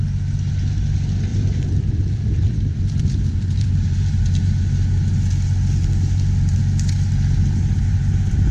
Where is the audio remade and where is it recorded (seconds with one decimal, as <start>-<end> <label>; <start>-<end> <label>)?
0.0-1.3 recorded; 1.3-4.2 remade; 4.2-8.5 recorded